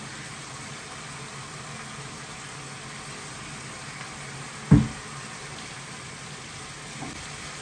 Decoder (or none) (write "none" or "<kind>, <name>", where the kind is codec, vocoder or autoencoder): none